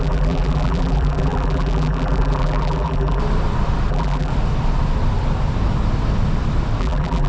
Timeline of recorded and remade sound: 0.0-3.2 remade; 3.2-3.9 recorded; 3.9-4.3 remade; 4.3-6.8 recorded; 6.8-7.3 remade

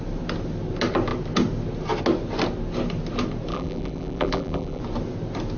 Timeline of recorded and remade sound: 0.0-3.5 recorded; 3.5-4.8 remade; 4.8-5.6 recorded

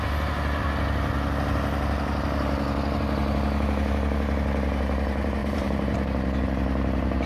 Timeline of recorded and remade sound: 0.0-5.4 recorded; 5.4-6.4 remade; 6.4-7.3 recorded

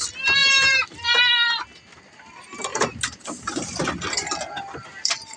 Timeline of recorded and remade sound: 0.0-0.4 recorded; 0.4-1.2 remade; 1.2-2.7 recorded; 2.7-4.3 remade; 4.3-5.4 recorded

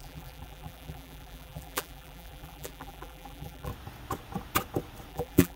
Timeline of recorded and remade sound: 0.0-3.7 remade; 3.7-5.1 recorded; 5.1-5.6 remade

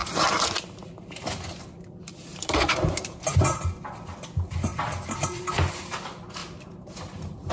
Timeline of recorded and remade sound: 0.0-0.6 remade; 0.6-2.3 recorded; 2.3-3.4 remade; 3.4-4.7 recorded; 4.7-5.7 remade; 5.7-6.4 recorded; 6.4-7.5 remade

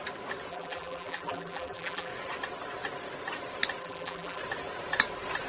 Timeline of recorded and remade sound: 0.0-0.5 recorded; 0.5-2.1 remade; 2.1-3.8 recorded; 3.8-4.4 remade; 4.4-5.5 recorded

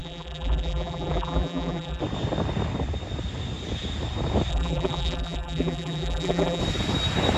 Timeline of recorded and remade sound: 0.0-2.0 remade; 2.0-4.5 recorded; 4.5-6.6 remade; 6.6-7.4 recorded